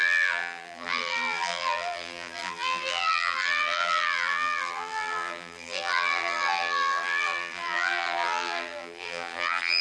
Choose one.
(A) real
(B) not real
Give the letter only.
B